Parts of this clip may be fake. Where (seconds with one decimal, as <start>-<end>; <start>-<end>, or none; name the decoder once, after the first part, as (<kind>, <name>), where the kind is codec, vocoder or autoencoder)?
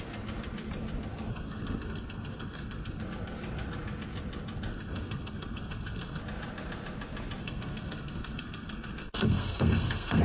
1.3-3.0 (codec, SNAC); 4.7-6.2; 7.4-10.2